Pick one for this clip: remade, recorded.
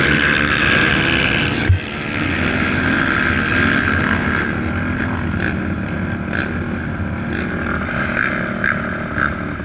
recorded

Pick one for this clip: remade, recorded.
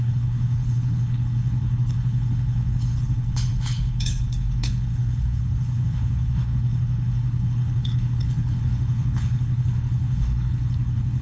remade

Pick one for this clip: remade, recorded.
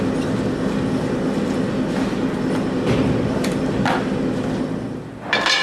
recorded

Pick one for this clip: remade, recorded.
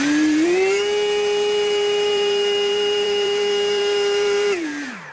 remade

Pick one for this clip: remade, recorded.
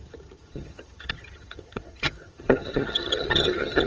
remade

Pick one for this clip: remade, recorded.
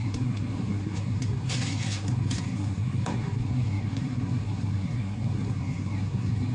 remade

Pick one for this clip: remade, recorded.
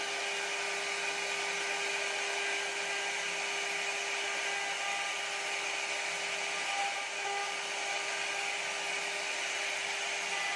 recorded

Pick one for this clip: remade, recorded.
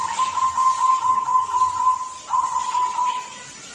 recorded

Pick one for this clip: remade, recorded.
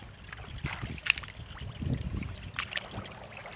recorded